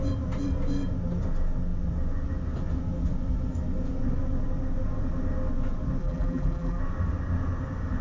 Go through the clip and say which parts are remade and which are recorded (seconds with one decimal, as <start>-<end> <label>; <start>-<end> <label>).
0.0-6.0 recorded; 6.0-6.8 remade; 6.8-8.0 recorded